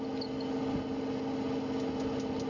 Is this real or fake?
real